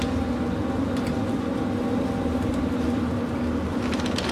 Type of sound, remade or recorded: recorded